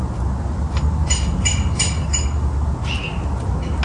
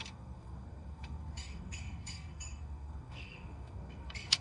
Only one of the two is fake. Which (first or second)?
second